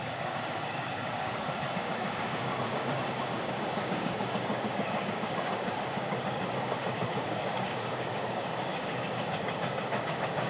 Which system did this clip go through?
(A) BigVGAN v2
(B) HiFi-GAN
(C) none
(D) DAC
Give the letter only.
D